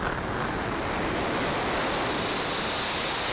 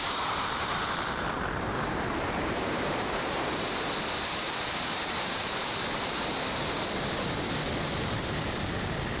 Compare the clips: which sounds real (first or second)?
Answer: first